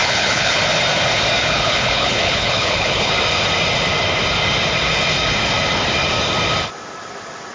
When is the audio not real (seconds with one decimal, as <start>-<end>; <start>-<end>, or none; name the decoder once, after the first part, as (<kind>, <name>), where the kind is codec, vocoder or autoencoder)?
0.0-0.6 (codec, HILCodec); 1.4-3.1